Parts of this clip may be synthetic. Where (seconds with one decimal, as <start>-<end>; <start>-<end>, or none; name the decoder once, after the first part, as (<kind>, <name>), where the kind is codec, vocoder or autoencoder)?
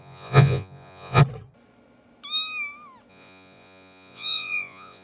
0.0-1.2 (vocoder, Vocos); 3.1-5.0